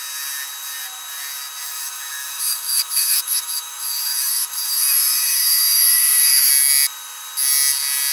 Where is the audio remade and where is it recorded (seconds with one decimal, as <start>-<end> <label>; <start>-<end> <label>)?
0.0-1.6 recorded; 1.6-6.5 remade; 6.5-8.1 recorded